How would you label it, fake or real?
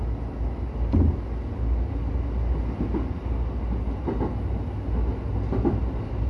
real